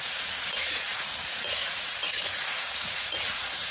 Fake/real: fake